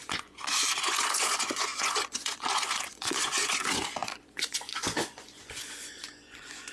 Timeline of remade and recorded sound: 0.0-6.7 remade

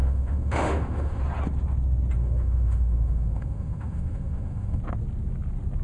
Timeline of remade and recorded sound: 0.0-1.2 remade; 1.2-2.2 recorded; 2.2-4.8 remade; 4.8-5.8 recorded

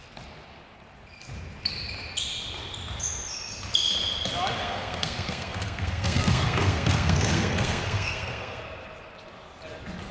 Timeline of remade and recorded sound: 0.0-4.6 recorded; 4.6-8.6 remade; 8.6-10.1 recorded